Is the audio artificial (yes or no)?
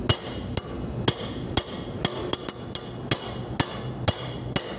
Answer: no